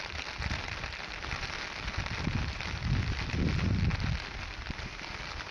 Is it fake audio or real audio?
fake